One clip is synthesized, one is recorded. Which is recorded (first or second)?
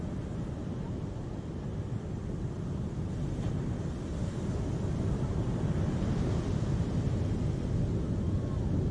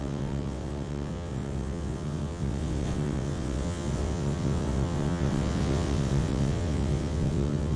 first